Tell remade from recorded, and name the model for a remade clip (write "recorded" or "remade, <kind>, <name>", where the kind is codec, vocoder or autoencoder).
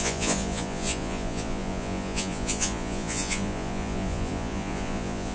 remade, vocoder, Vocos